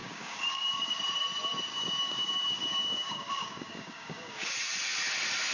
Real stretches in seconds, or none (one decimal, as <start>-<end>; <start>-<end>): 1.0-1.7; 4.5-5.5